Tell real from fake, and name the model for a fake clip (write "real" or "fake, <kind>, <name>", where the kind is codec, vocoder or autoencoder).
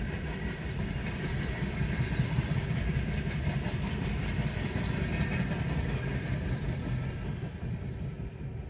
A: fake, vocoder, BigVGAN v2